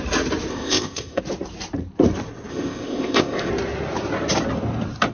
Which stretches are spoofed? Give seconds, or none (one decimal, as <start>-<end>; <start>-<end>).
0.5-1.2; 2.5-3.5